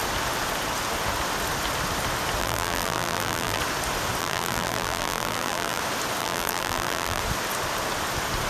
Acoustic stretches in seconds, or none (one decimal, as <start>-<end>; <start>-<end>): 0.0-2.4; 3.6-4.2; 5.8-6.2; 7.2-8.5